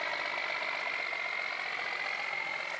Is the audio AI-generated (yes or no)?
no